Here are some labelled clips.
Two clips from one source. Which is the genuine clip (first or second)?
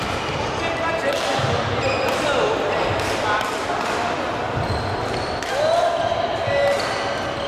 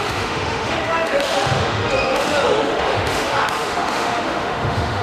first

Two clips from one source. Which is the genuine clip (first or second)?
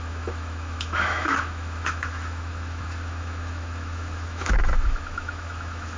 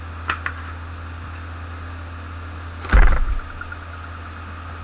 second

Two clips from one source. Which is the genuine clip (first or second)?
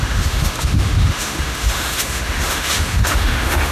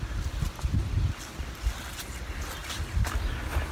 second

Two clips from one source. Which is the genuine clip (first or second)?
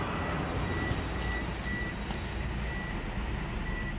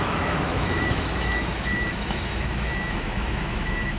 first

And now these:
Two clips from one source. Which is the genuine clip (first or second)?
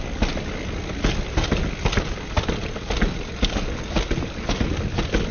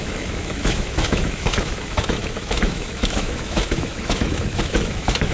first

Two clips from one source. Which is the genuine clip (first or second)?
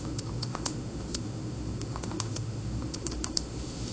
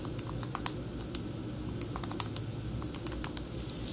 second